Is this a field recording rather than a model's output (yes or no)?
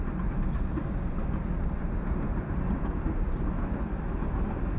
yes